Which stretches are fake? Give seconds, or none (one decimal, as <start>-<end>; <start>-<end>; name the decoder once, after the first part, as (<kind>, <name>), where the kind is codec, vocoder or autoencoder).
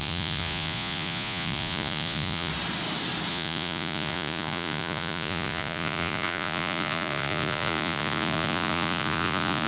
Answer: 0.0-2.5 (vocoder, Vocos); 3.3-9.7